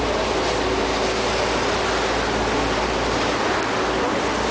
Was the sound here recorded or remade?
recorded